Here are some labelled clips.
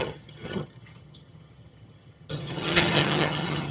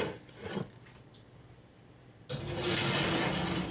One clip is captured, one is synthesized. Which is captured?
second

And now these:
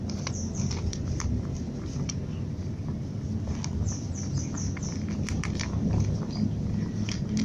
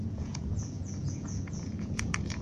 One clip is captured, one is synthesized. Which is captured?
first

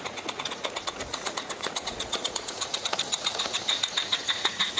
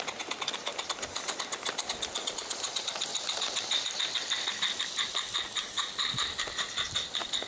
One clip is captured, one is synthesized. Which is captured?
second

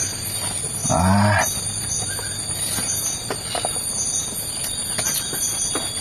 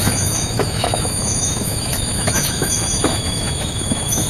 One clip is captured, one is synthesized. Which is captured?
first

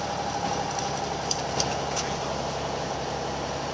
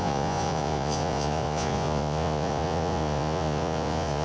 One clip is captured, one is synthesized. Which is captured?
first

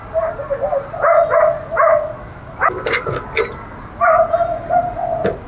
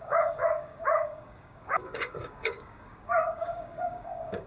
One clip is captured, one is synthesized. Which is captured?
first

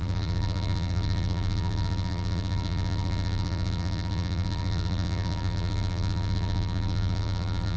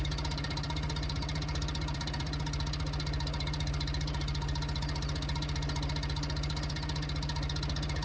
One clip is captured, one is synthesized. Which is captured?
second